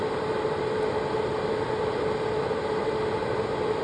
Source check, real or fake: real